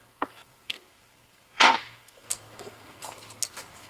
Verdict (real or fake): fake